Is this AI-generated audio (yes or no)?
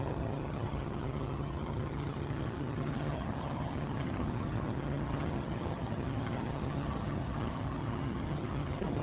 yes